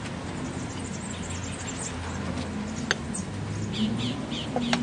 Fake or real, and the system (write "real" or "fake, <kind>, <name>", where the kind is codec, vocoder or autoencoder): real